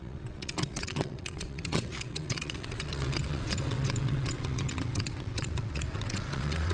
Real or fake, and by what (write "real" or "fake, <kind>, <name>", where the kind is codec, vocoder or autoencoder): fake, vocoder, WaveNeXt